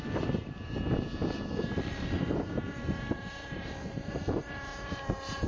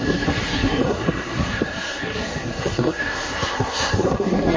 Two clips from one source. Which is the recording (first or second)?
first